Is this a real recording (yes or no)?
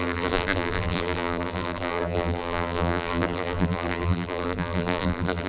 no